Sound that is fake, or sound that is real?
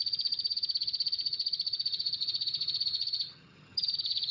fake